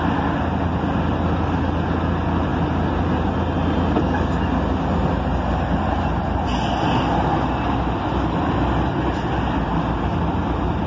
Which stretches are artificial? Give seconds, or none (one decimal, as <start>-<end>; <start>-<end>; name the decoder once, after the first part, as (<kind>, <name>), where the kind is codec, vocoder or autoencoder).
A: none